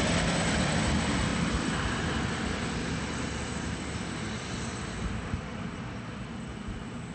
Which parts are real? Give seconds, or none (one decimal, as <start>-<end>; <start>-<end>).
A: 0.0-7.1